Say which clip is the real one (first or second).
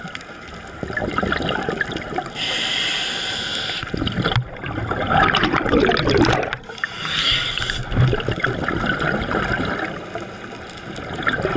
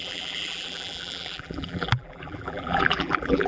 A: first